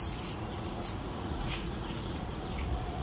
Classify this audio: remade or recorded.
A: remade